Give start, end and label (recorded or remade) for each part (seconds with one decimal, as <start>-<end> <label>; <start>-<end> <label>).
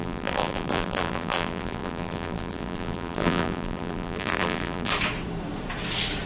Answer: 0.0-4.9 remade; 4.9-6.3 recorded